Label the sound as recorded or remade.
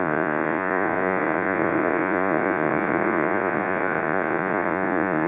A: remade